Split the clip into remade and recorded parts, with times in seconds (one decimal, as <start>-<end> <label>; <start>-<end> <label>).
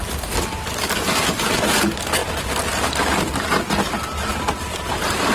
0.0-4.3 recorded; 4.3-5.3 remade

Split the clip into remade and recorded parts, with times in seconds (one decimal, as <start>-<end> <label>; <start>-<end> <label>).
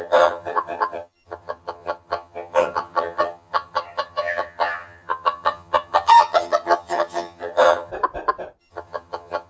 0.0-7.9 remade; 7.9-8.6 recorded; 8.6-9.5 remade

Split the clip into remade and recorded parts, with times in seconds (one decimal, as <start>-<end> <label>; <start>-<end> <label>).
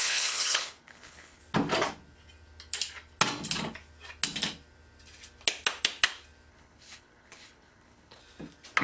0.0-1.4 remade; 1.4-6.5 recorded; 6.5-8.2 remade; 8.2-8.8 recorded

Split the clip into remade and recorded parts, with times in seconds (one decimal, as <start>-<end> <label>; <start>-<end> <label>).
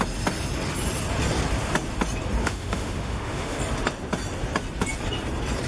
0.0-2.4 recorded; 2.4-3.6 remade; 3.6-5.7 recorded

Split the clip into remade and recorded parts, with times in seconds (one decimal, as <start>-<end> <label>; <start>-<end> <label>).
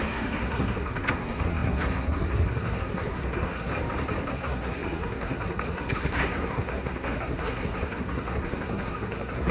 0.0-3.7 remade; 3.7-4.3 recorded; 4.3-9.5 remade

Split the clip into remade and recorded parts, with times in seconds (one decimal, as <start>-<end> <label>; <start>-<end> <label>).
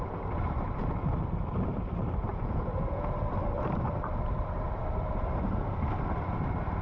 0.0-2.3 recorded; 2.3-3.1 remade; 3.1-6.8 recorded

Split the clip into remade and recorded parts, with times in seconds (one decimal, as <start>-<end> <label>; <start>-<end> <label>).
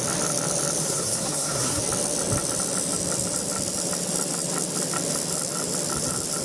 0.0-0.8 recorded; 0.8-1.8 remade; 1.8-6.4 recorded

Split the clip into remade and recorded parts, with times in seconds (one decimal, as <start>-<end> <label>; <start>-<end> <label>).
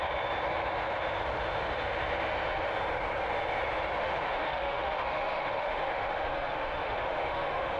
0.0-4.0 recorded; 4.0-7.8 remade